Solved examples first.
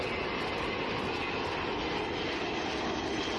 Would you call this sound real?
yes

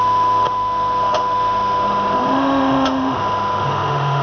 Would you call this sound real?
no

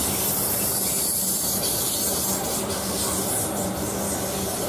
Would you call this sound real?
yes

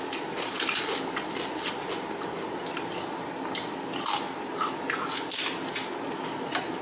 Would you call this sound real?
yes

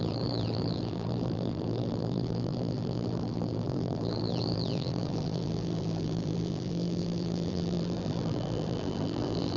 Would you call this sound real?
no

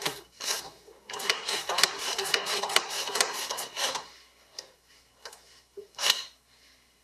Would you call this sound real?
no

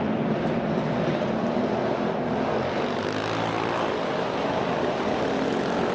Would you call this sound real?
yes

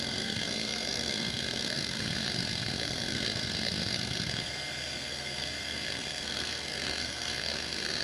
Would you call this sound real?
no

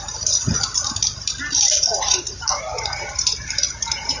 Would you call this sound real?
no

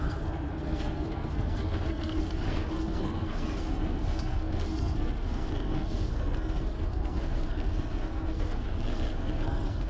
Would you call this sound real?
no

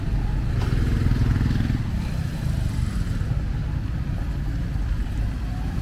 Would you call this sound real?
yes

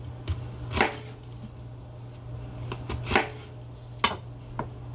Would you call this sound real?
yes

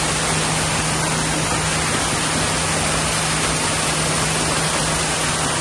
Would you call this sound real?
yes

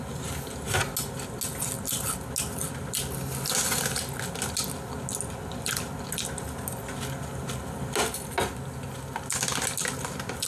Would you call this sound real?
yes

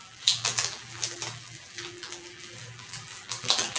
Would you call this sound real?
no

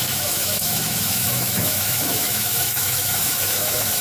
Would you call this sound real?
no